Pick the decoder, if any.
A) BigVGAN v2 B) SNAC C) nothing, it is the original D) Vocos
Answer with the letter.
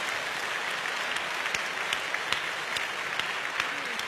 C